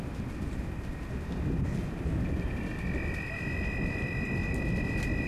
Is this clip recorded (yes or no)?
yes